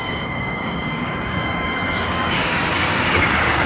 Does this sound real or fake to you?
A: fake